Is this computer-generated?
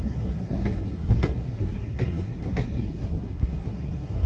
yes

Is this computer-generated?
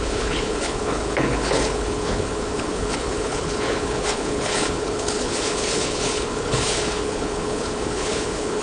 yes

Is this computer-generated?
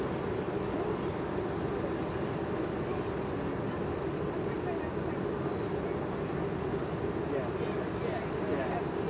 no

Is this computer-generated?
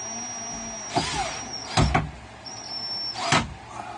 no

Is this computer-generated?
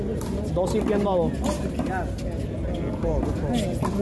no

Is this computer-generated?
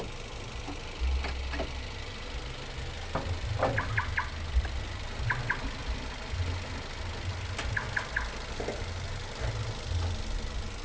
no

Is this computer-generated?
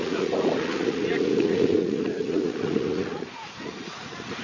yes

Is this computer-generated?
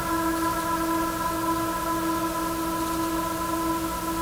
no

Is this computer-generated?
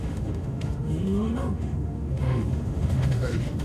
yes